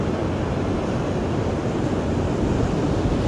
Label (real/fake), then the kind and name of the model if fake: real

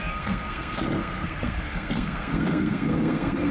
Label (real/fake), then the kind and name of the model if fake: fake, codec, SNAC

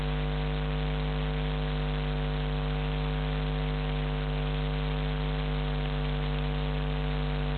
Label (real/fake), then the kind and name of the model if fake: real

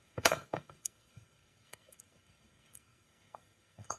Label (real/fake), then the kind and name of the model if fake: fake, codec, SNAC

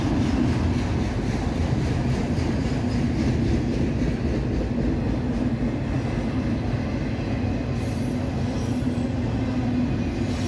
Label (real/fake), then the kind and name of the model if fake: real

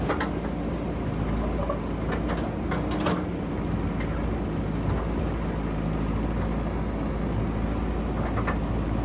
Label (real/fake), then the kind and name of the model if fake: real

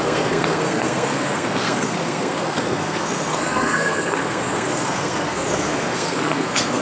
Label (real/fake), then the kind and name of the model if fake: fake, codec, SNAC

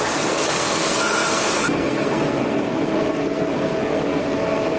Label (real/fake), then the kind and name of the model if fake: fake, codec, SNAC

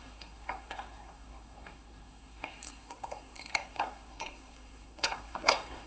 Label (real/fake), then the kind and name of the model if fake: fake, codec, SNAC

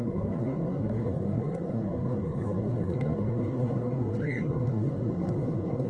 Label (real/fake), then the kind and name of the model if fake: fake, codec, SNAC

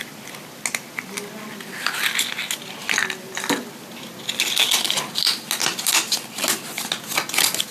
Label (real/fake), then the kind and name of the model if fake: real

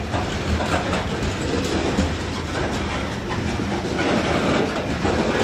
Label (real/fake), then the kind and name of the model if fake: real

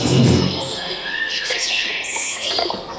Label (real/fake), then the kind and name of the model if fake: fake, codec, SNAC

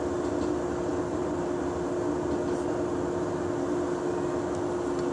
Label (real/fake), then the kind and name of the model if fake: real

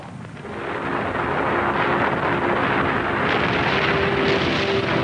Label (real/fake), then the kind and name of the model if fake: real